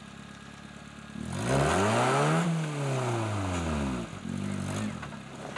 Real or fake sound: real